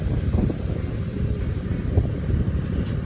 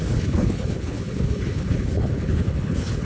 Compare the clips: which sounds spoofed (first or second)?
second